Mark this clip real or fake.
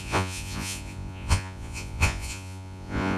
fake